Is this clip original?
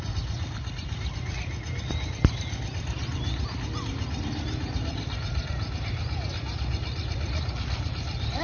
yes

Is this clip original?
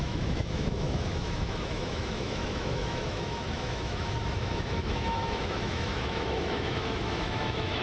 no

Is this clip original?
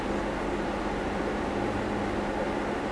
yes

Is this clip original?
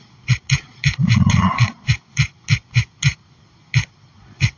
no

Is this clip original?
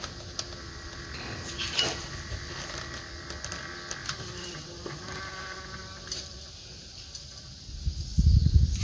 yes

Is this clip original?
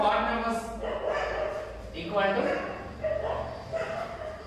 yes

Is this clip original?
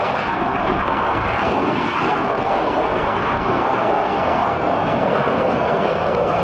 no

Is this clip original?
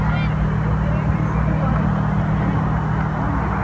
yes